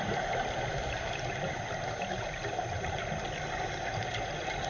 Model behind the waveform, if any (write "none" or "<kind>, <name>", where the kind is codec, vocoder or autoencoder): none